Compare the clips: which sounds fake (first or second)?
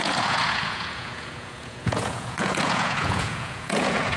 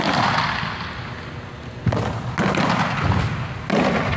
first